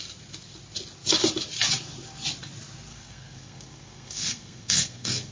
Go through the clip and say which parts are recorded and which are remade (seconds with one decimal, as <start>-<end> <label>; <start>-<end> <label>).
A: 0.0-2.9 recorded; 2.9-5.3 remade